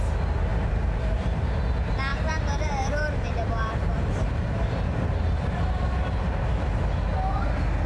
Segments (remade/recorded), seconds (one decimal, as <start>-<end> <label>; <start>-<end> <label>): 0.0-0.5 recorded; 0.5-1.6 remade; 1.6-2.1 recorded; 2.1-6.8 remade; 6.8-7.9 recorded